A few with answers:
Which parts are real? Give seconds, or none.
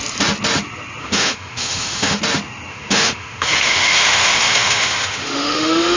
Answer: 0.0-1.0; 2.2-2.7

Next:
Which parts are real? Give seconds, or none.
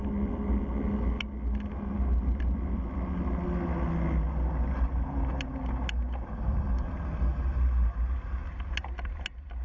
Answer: 0.0-9.6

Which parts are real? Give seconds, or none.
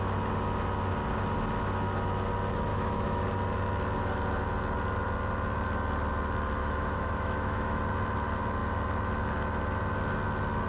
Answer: 0.0-2.7; 3.2-6.6; 7.8-10.7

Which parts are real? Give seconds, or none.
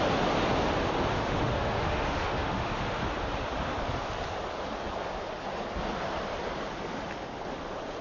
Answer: 0.0-1.1; 3.0-8.0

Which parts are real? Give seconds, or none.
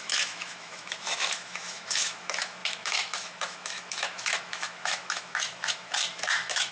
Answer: none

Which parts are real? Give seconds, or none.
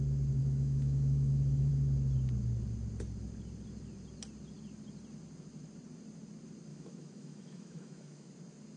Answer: 0.0-0.4; 1.7-6.7; 8.3-8.8